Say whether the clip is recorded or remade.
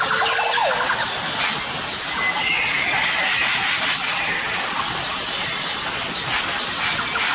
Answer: recorded